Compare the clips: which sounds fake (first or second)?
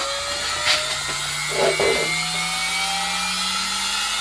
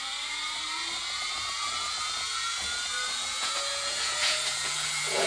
second